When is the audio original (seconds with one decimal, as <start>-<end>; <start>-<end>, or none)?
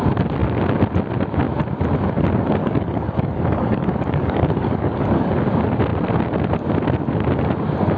0.0-2.6; 5.3-8.0